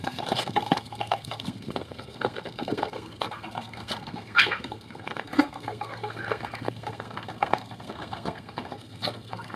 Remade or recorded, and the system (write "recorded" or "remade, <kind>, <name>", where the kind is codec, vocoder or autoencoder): remade, codec, SNAC